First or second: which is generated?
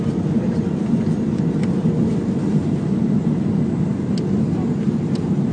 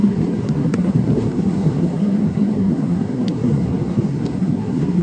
second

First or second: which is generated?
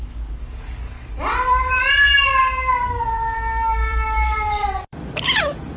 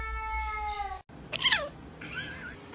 first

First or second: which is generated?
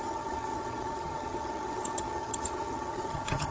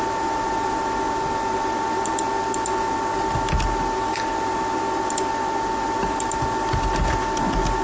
first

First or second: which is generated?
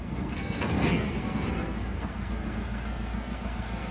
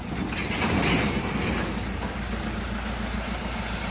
first